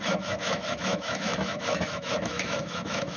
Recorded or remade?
remade